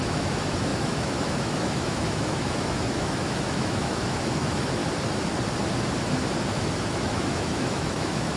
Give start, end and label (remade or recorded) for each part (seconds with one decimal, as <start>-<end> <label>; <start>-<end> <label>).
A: 0.0-4.8 remade; 4.8-6.5 recorded; 6.5-8.4 remade